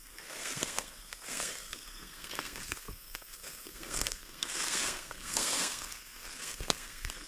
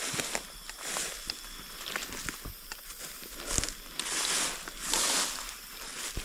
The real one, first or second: second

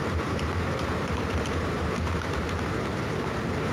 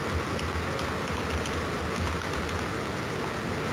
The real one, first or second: second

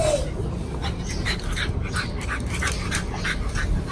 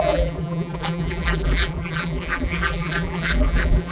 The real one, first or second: first